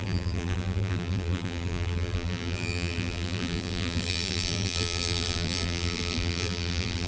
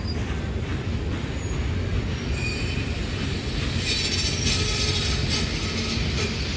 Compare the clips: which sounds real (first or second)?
second